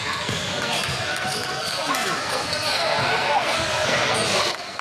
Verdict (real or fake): fake